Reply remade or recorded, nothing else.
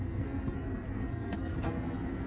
remade